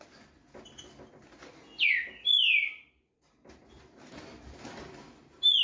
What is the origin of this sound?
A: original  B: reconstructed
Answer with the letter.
A